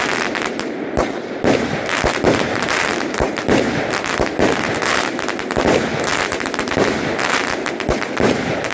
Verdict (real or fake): real